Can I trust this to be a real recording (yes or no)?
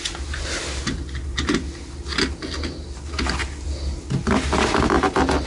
yes